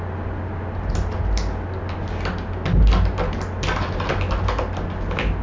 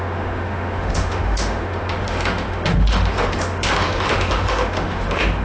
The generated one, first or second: second